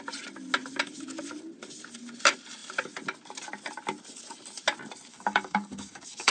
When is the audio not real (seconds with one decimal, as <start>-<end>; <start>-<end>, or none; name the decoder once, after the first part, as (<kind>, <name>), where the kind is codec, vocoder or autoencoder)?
5.1-6.3 (codec, DAC)

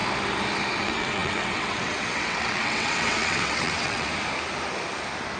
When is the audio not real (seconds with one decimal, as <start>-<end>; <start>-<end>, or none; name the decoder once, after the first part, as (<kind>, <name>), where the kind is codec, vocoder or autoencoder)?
0.7-4.1 (vocoder, WaveNeXt)

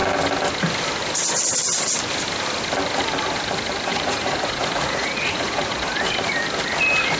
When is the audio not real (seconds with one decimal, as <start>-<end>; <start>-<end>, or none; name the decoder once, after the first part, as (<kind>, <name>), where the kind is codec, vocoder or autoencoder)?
3.9-5.8 (vocoder, Vocos)

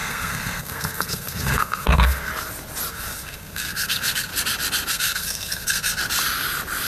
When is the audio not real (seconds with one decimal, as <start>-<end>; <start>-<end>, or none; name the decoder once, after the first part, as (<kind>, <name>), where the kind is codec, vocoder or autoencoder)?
0.0-2.3 (codec, SNAC); 2.9-4.3; 4.9-6.0

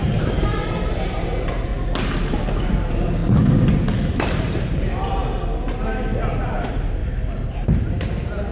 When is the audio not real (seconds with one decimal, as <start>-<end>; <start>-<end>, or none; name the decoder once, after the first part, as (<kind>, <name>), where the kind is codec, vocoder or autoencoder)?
0.0-1.7 (vocoder, BigVGAN v2); 2.2-3.2; 4.1-5.2; 6.3-7.0

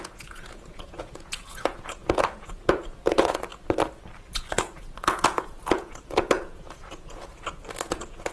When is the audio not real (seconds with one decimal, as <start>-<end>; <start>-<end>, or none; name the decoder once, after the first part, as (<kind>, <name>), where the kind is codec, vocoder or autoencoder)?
0.0-3.5 (vocoder, Vocos); 4.3-8.3